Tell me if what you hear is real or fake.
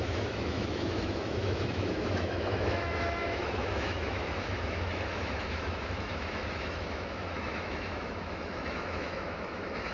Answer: fake